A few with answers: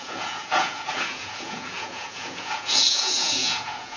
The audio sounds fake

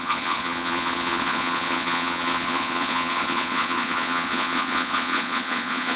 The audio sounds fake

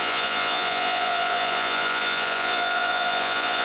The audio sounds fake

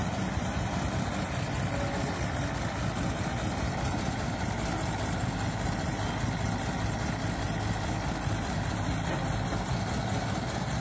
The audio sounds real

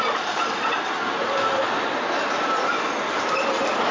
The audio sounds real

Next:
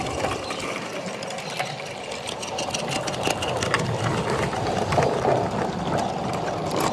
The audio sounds real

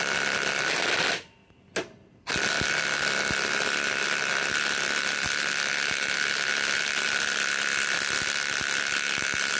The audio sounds real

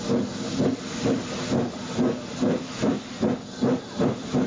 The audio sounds real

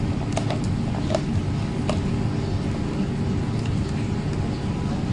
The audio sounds real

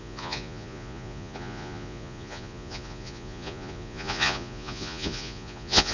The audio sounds fake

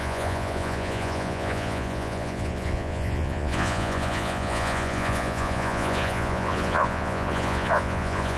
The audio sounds fake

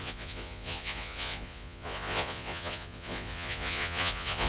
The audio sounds fake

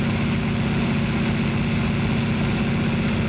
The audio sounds real